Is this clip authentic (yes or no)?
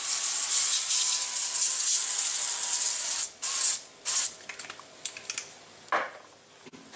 yes